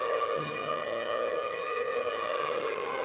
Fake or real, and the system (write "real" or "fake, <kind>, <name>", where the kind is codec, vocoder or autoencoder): fake, vocoder, HiFi-GAN